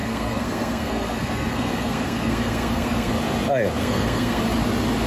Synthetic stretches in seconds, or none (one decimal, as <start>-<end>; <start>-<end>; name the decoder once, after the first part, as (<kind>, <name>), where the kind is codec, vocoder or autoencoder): 0.0-3.1 (codec, SNAC); 3.8-4.4